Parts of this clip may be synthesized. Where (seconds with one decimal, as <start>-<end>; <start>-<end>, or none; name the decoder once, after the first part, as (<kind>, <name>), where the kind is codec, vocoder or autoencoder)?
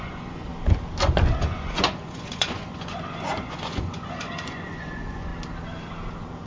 0.0-0.5 (vocoder, Vocos); 1.4-5.3